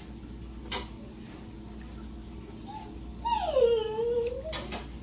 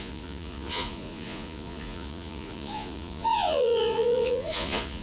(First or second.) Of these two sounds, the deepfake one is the second